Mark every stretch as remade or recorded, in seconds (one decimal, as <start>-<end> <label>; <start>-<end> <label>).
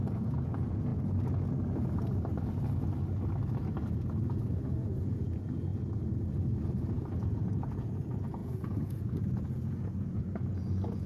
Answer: 0.0-0.9 remade; 0.9-4.7 recorded; 4.7-5.7 remade; 5.7-7.2 recorded; 7.2-11.1 remade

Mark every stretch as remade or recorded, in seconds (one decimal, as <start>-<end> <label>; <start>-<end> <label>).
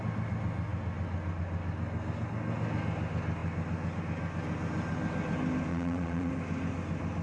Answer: 0.0-5.7 recorded; 5.7-6.3 remade; 6.3-7.2 recorded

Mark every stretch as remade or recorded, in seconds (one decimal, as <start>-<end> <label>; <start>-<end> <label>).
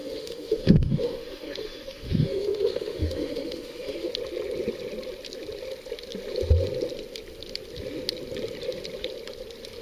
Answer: 0.0-4.1 remade; 4.1-9.8 recorded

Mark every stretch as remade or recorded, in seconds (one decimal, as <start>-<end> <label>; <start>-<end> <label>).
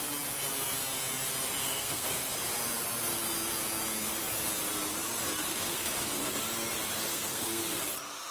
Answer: 0.0-1.6 recorded; 1.6-2.3 remade; 2.3-5.5 recorded; 5.5-6.2 remade; 6.2-7.1 recorded; 7.1-7.6 remade; 7.6-8.3 recorded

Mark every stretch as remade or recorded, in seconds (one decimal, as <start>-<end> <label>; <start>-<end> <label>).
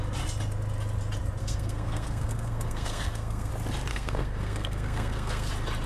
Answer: 0.0-1.4 recorded; 1.4-3.5 remade; 3.5-3.9 recorded; 3.9-5.5 remade; 5.5-5.9 recorded